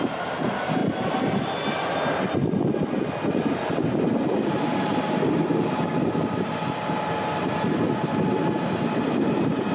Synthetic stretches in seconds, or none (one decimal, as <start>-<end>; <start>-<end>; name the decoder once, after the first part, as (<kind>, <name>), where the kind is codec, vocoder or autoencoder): none